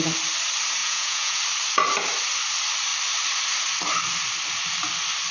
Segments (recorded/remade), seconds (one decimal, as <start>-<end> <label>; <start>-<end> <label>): 0.0-0.8 recorded; 0.8-1.4 remade; 1.4-5.3 recorded